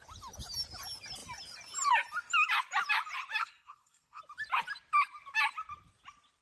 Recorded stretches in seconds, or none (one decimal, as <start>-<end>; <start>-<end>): 0.0-3.4; 4.2-6.4